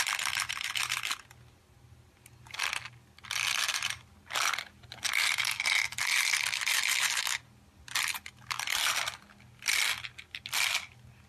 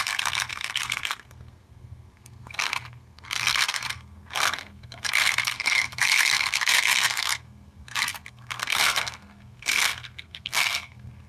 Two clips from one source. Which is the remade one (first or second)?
second